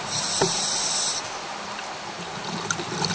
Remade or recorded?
recorded